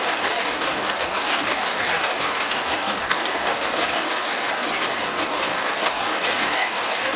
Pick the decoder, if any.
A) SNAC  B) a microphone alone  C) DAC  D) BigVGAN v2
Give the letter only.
C